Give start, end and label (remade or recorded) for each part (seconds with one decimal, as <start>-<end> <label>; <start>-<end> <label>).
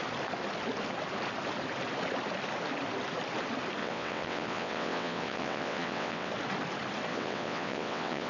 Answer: 0.0-3.8 recorded; 3.8-6.3 remade; 6.3-7.1 recorded; 7.1-8.3 remade